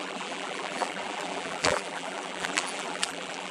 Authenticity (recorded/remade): remade